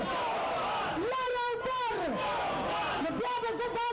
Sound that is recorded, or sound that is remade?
recorded